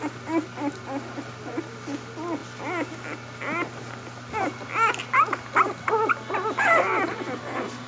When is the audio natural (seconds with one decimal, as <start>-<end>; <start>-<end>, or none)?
0.0-7.9